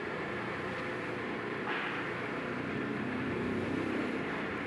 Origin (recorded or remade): remade